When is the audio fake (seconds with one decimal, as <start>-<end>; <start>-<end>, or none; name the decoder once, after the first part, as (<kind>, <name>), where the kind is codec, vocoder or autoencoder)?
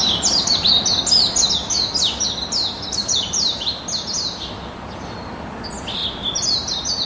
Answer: 3.0-3.8 (vocoder, BigVGAN v2)